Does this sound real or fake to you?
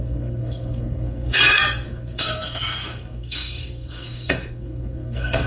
fake